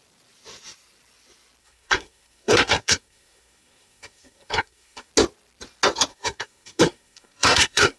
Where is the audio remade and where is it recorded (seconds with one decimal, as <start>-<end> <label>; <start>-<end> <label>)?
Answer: 0.0-1.6 recorded; 1.6-5.1 remade; 5.1-6.1 recorded; 6.1-8.0 remade